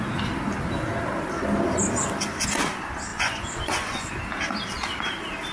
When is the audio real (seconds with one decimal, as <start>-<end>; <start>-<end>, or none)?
0.0-3.1; 4.2-5.5